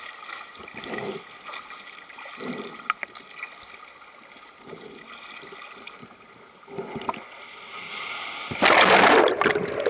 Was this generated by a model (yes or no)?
no